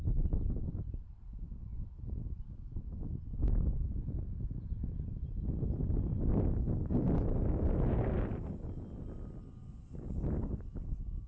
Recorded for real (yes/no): yes